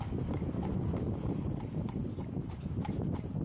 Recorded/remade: recorded